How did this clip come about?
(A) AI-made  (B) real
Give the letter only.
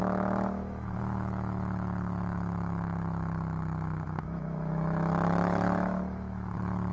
A